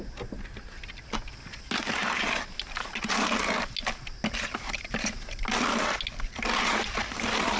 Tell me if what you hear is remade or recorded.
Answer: recorded